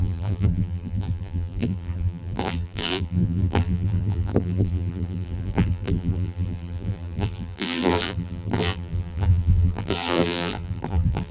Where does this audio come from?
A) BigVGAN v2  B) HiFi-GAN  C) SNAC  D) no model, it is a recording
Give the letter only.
A